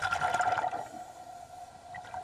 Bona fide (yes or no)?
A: yes